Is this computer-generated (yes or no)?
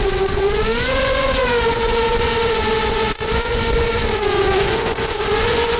yes